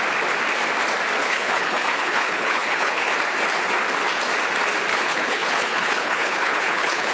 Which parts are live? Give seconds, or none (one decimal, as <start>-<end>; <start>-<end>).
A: 0.0-1.2; 3.1-4.9